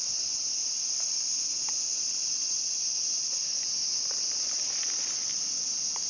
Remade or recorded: recorded